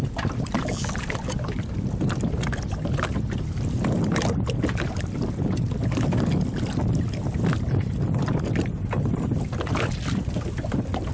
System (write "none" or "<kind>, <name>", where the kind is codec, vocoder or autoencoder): none